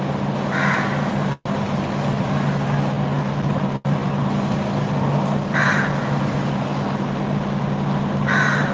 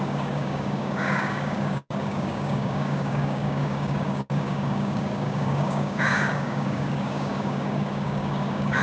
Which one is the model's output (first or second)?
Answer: second